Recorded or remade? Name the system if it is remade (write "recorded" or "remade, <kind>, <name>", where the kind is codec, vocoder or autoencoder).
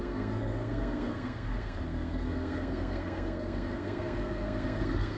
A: remade, codec, SNAC